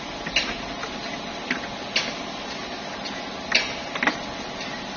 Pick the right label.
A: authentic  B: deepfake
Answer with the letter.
A